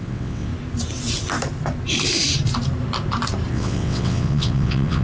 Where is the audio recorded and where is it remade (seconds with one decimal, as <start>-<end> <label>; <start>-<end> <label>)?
0.0-0.5 remade; 0.5-3.5 recorded; 3.5-5.0 remade